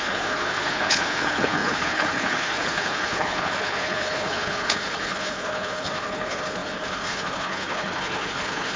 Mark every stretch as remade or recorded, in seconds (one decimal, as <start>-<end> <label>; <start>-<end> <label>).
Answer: 0.0-8.8 remade